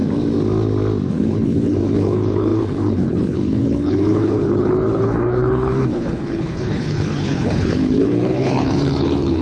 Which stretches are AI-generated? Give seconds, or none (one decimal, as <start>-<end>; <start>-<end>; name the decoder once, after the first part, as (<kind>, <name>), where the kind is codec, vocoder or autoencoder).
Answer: 1.1-9.4 (codec, HILCodec)